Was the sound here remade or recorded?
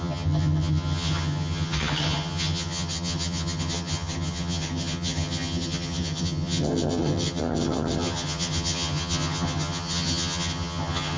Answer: remade